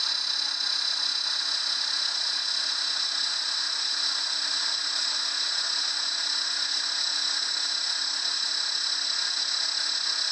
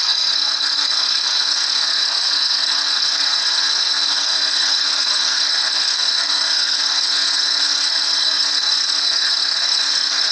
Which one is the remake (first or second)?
second